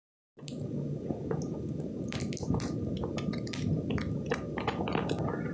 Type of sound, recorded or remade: recorded